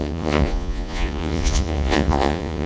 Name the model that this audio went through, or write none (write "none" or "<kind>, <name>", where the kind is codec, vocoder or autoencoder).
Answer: vocoder, Vocos